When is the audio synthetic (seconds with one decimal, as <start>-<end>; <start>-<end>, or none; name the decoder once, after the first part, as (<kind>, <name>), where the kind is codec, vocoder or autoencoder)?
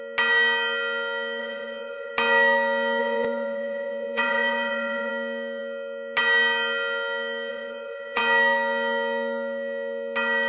1.4-2.1 (vocoder, Vocos); 3.0-5.1; 7.5-8.2